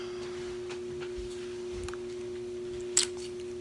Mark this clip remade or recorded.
recorded